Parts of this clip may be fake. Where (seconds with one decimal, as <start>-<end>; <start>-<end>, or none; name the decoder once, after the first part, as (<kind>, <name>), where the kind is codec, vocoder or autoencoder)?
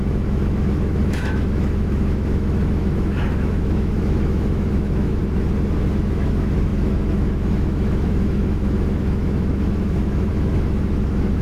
0.0-5.2 (autoencoder, DAC-VAE); 6.1-11.4